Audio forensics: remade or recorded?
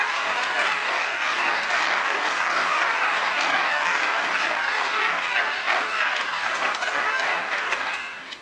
remade